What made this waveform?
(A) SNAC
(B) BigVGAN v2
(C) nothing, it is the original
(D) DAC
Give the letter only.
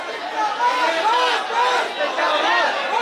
C